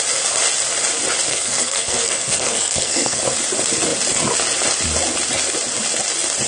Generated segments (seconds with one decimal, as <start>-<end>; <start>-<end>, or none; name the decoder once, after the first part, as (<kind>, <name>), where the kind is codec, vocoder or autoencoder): 1.3-3.2 (codec, SNAC)